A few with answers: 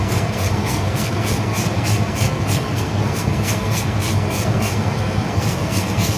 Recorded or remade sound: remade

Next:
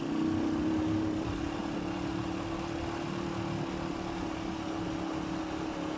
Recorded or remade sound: recorded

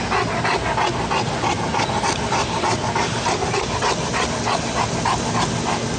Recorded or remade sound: recorded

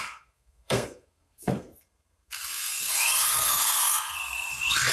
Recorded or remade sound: remade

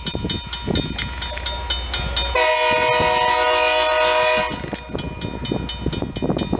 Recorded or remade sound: recorded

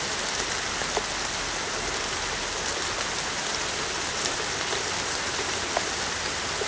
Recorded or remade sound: recorded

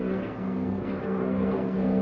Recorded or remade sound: remade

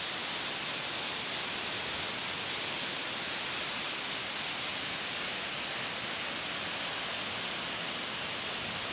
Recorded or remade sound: recorded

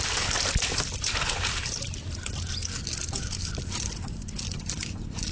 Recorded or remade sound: recorded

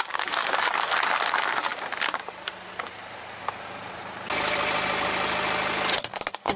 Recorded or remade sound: recorded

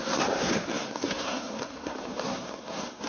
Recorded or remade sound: remade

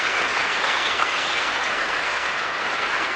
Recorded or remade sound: remade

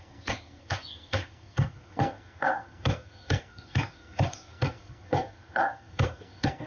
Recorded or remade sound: remade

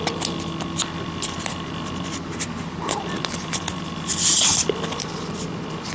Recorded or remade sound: recorded